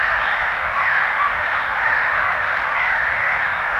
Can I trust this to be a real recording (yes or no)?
no